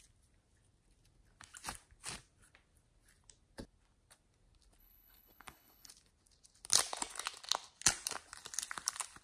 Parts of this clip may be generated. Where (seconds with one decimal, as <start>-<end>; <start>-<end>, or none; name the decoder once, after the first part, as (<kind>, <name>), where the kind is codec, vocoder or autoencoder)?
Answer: 4.8-5.9 (codec, HILCodec)